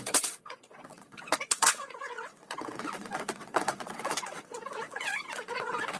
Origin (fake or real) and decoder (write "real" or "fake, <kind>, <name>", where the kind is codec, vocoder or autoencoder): fake, vocoder, WaveNeXt